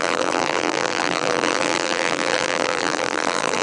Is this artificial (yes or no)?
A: yes